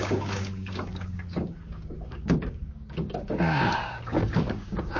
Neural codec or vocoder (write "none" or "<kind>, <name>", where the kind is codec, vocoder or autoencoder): codec, DAC